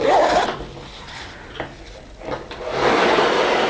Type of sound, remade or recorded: remade